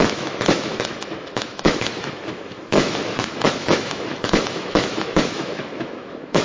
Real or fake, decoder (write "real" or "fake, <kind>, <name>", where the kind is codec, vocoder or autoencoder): fake, autoencoder, DAC-VAE